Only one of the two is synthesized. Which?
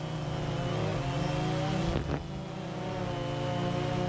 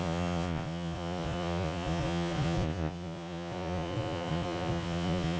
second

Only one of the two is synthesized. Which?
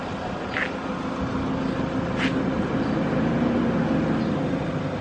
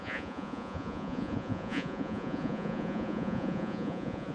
second